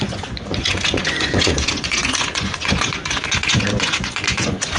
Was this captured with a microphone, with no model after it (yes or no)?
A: no